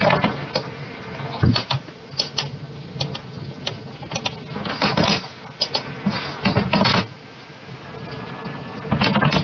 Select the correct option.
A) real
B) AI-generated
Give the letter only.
A